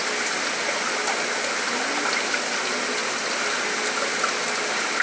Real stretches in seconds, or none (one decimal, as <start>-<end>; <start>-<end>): 0.0-5.0